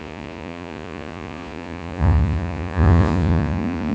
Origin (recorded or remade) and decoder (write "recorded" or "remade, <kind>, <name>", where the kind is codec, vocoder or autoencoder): remade, vocoder, Vocos